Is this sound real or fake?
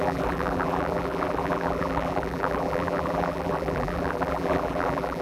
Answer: fake